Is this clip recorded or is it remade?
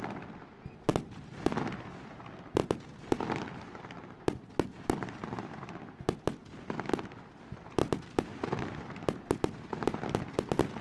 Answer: recorded